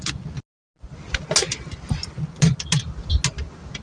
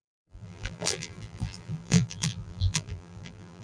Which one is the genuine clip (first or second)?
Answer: first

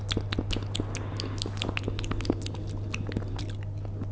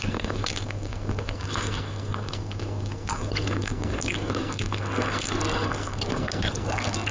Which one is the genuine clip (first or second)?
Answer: first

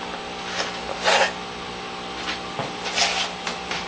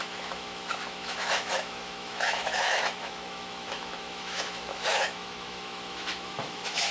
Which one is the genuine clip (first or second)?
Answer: first